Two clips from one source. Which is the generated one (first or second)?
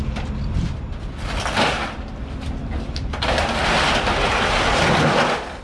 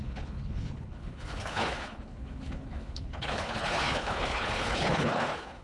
second